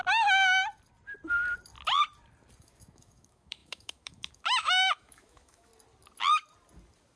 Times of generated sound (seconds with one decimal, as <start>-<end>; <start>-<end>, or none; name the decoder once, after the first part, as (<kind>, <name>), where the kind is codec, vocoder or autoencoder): 2.6-5.7 (autoencoder, DAC-VAE)